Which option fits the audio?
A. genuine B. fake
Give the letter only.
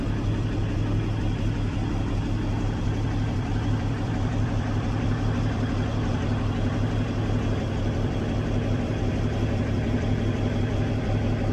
B